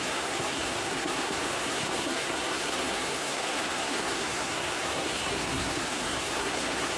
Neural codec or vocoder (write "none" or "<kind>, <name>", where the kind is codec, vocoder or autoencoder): codec, SNAC